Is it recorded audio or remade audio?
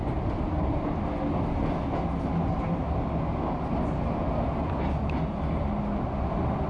recorded